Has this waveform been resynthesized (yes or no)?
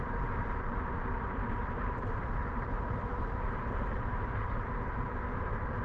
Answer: yes